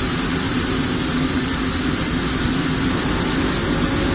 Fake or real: real